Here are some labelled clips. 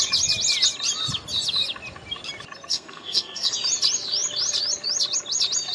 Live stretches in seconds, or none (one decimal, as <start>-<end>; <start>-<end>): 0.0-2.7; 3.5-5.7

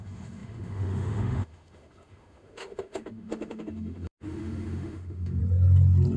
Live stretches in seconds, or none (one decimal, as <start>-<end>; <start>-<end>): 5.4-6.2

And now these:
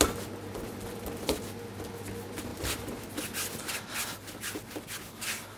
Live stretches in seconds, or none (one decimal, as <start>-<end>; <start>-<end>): 0.0-2.5; 3.0-5.6

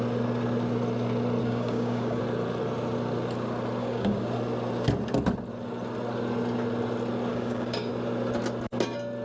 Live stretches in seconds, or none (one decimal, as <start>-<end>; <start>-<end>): 0.0-1.4; 2.2-3.8; 4.3-7.3; 7.9-9.2